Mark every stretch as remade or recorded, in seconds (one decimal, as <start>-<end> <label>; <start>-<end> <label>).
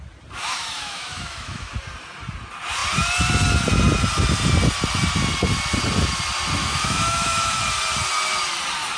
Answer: 0.0-0.4 recorded; 0.4-1.7 remade; 1.7-6.6 recorded; 6.6-7.6 remade; 7.6-9.0 recorded